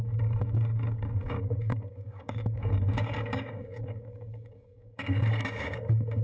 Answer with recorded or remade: remade